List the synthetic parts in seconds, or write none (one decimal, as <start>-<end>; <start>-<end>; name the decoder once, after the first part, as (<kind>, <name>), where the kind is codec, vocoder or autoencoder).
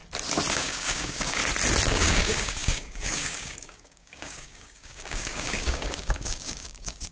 0.5-1.4 (codec, DAC); 1.9-7.1